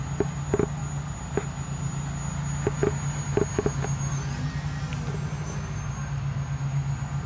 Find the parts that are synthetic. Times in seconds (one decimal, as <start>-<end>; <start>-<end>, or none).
none